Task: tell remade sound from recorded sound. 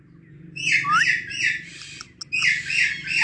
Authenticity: recorded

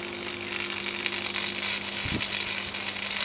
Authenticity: recorded